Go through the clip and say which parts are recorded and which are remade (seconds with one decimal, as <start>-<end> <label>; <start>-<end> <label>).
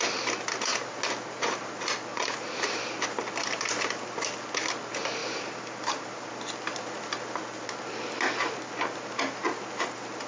0.0-2.1 recorded; 2.1-2.8 remade; 2.8-5.2 recorded; 5.2-6.3 remade; 6.3-10.3 recorded